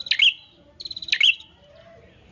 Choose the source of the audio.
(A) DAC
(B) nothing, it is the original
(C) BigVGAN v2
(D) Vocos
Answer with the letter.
B